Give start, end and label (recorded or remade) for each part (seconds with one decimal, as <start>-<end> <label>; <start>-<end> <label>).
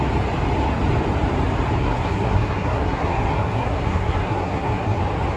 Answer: 0.0-1.8 recorded; 1.8-5.0 remade; 5.0-5.4 recorded